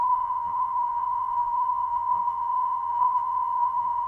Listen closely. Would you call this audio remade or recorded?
remade